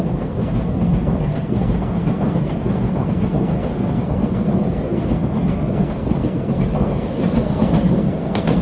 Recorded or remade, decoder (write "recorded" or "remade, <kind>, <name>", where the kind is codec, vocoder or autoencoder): remade, codec, SNAC